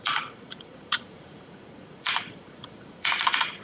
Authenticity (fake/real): fake